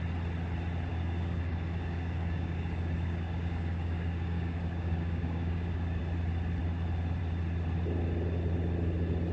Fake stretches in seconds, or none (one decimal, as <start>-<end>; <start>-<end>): 0.9-6.0